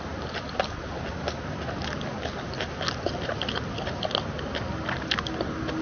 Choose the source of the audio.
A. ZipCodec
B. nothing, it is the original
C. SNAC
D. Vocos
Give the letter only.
B